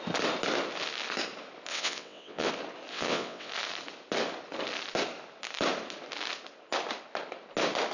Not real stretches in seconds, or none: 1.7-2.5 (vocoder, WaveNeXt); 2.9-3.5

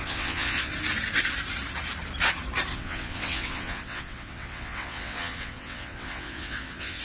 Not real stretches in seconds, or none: 0.0-0.7 (vocoder, WaveNeXt); 2.7-7.0

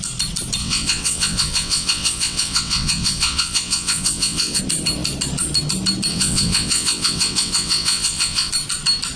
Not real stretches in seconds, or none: 0.6-4.6 (vocoder, WaveNeXt); 6.1-8.5

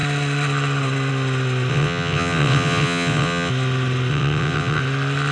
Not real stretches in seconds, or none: 1.7-3.5 (vocoder, WaveNeXt); 4.1-4.8

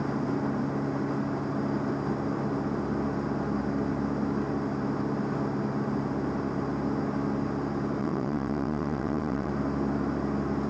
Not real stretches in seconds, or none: 8.0-9.5 (vocoder, WaveNeXt)